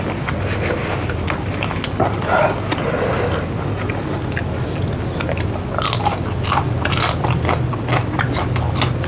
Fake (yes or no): no